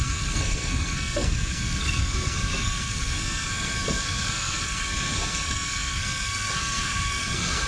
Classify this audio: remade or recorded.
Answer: remade